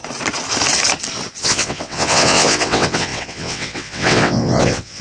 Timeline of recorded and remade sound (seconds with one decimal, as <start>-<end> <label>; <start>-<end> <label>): 0.0-1.4 recorded; 1.4-5.0 remade